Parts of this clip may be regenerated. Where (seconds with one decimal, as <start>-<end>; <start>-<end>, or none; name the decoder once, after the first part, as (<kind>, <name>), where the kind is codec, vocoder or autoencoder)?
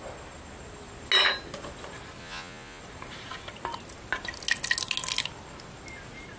2.2-2.8 (vocoder, Vocos)